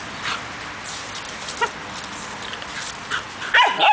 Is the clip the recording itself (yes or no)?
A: yes